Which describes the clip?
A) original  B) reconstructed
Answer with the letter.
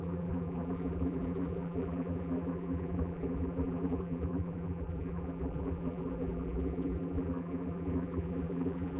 B